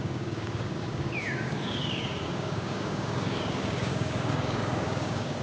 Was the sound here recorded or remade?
remade